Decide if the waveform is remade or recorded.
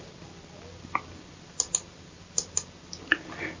recorded